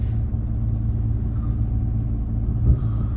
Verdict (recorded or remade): recorded